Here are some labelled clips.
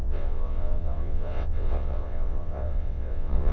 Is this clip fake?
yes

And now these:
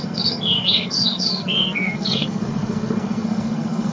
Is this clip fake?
yes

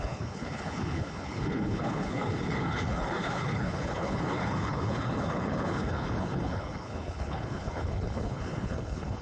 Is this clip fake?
yes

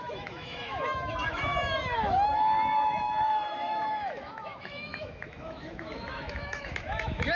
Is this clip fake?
yes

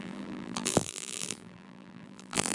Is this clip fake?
yes